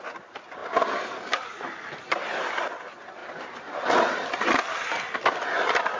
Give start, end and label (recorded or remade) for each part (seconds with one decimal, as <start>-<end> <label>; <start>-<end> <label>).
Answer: 0.0-6.0 recorded